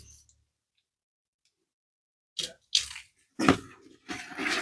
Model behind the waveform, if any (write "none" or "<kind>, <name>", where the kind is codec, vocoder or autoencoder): none